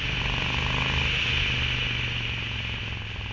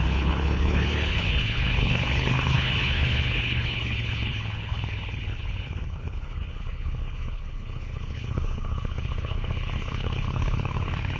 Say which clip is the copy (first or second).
second